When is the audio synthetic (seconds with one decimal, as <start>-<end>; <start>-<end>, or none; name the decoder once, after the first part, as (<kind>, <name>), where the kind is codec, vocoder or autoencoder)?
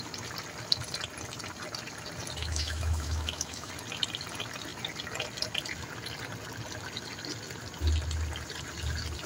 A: 2.4-3.7 (autoencoder, DAC-VAE)